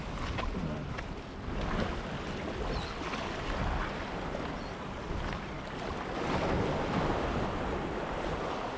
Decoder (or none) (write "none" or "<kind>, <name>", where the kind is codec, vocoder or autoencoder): none